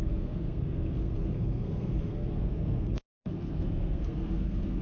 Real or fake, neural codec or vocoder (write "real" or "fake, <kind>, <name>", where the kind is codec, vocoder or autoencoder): fake, codec, SNAC